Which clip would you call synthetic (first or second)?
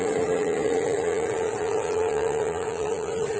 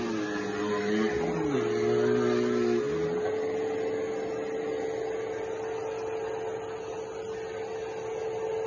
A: first